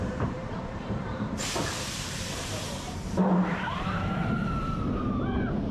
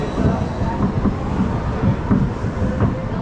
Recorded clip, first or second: second